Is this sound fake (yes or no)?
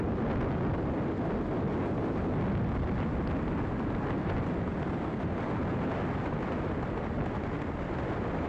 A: no